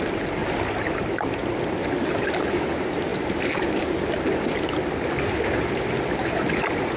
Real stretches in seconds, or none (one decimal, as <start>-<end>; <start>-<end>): 0.0-0.4; 1.4-7.0

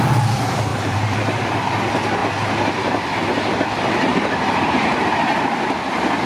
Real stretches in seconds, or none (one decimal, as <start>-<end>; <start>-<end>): 0.0-0.7; 1.7-4.1; 5.5-6.3

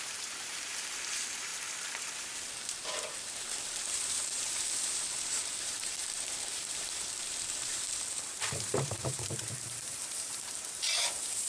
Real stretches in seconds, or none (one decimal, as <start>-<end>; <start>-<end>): 1.5-2.2

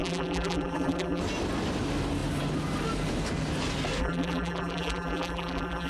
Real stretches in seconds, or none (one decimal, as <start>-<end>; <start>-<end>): 1.2-4.0

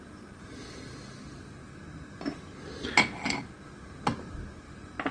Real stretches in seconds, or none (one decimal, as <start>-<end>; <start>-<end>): 0.0-5.1

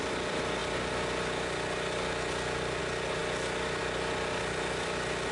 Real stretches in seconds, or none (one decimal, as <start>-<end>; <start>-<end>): 0.6-2.8; 3.2-3.8

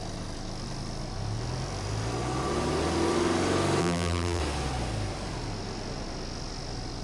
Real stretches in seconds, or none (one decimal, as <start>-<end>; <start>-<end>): 0.0-3.8; 4.4-7.0